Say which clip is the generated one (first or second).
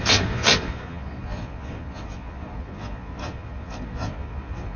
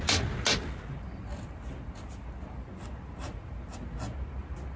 first